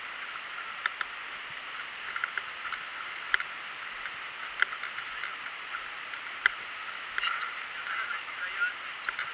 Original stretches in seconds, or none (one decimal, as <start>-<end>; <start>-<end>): 0.0-9.3

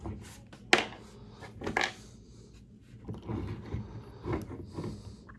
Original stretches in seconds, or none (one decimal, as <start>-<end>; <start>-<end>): 0.0-5.4

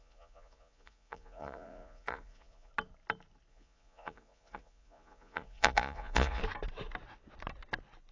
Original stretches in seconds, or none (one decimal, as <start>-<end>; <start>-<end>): 2.7-3.5; 6.4-8.1

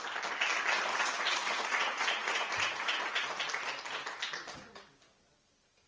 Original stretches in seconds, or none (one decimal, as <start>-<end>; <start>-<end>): 0.0-0.9; 3.3-5.9